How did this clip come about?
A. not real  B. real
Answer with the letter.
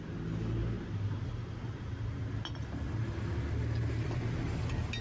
B